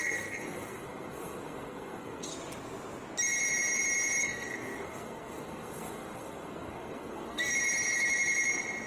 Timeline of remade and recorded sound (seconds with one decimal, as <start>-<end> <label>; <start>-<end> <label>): 0.0-2.3 remade; 2.3-4.2 recorded; 4.2-7.5 remade; 7.5-8.9 recorded